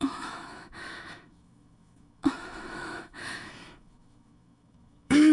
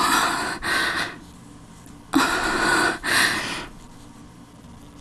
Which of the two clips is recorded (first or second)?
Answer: second